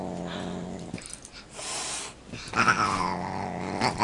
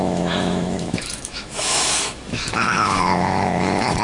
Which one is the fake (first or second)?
second